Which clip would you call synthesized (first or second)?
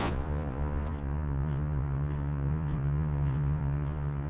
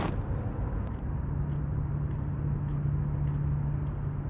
first